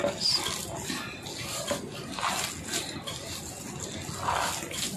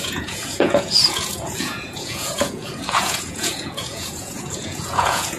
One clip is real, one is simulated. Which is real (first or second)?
first